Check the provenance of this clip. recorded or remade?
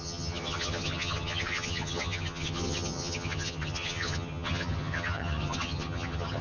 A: remade